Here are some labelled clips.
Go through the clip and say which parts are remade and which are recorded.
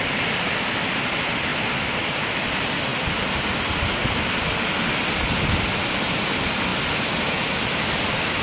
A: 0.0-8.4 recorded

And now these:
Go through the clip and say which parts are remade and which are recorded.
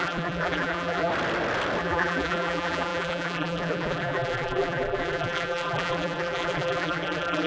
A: 0.0-1.1 remade; 1.1-1.8 recorded; 1.8-7.5 remade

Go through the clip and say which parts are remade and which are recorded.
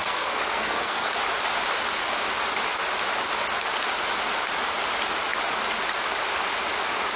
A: 0.0-1.1 remade; 1.1-7.2 recorded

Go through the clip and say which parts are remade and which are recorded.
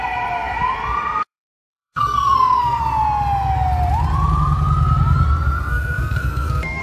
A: 0.0-1.2 recorded; 1.2-2.8 remade; 2.8-5.7 recorded; 5.7-6.8 remade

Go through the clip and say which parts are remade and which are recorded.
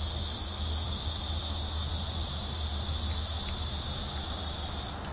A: 0.0-0.8 recorded; 0.8-1.4 remade; 1.4-5.1 recorded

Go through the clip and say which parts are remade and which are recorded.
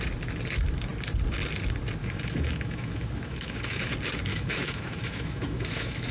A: 0.0-2.0 recorded; 2.0-3.9 remade; 3.9-4.3 recorded; 4.3-6.1 remade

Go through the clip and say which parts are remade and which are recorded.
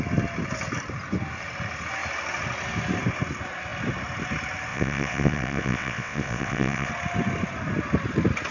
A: 0.0-4.7 recorded; 4.7-6.9 remade; 6.9-8.5 recorded